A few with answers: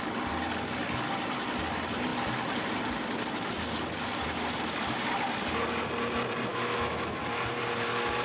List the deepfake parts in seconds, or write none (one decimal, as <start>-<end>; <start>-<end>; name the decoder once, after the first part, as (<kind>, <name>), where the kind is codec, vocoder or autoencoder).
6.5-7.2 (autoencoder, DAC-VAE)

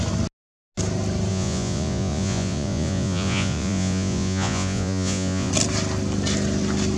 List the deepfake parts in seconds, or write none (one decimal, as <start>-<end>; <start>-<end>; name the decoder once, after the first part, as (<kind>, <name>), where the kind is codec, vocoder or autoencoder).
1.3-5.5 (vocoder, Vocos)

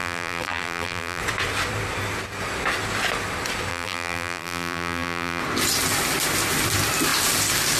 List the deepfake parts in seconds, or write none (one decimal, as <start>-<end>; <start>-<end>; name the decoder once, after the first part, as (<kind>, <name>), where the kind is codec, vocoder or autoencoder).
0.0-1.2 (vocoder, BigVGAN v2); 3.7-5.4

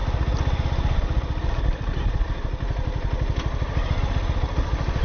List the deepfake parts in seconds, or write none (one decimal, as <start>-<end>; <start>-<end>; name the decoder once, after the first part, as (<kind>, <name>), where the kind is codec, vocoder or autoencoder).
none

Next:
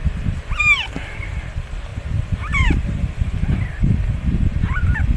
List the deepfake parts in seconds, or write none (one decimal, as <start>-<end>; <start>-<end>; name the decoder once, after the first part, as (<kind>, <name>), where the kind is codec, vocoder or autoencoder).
none

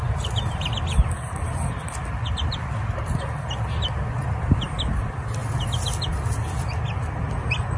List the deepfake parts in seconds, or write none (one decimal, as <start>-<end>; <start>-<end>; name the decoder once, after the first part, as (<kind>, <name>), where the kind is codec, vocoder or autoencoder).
none